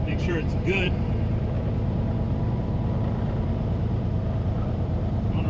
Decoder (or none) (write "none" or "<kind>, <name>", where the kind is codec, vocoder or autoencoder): vocoder, BigVGAN v2